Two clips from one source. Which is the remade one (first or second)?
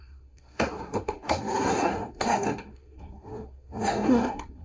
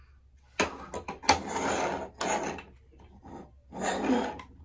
first